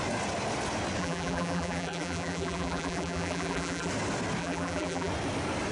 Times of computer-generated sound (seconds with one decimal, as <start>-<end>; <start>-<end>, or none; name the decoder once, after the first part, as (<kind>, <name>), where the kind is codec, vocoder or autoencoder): 1.0-3.9 (vocoder, BigVGAN v2); 4.4-5.1